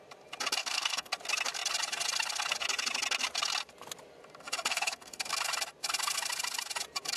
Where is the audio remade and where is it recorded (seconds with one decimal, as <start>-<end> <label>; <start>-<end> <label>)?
0.0-0.6 recorded; 0.6-1.1 remade; 1.1-4.7 recorded; 4.7-5.3 remade; 5.3-7.2 recorded

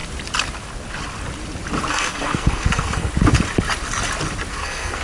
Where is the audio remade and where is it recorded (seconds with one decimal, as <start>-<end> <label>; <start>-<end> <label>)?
0.0-1.9 recorded; 1.9-3.1 remade; 3.1-4.5 recorded; 4.5-5.0 remade

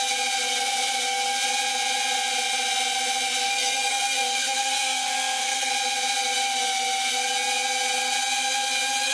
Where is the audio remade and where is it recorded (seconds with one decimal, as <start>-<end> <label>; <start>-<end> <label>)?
0.0-3.4 recorded; 3.4-5.7 remade; 5.7-9.1 recorded

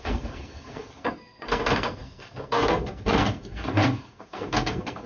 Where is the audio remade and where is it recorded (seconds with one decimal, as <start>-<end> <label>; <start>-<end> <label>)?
0.0-5.1 remade